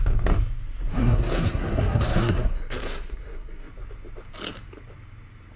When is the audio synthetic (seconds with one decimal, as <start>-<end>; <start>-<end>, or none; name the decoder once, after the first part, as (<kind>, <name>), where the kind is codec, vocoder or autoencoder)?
0.9-3.7 (codec, SNAC)